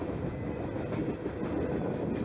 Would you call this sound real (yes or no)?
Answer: yes